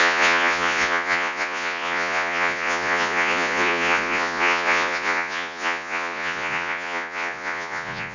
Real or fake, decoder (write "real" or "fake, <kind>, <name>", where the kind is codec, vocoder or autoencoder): fake, vocoder, Vocos